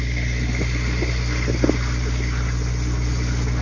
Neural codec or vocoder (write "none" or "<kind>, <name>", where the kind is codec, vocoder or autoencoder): none